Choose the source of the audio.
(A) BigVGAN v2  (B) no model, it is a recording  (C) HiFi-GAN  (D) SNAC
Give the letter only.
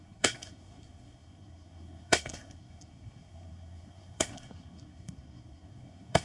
D